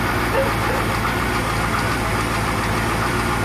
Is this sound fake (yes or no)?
no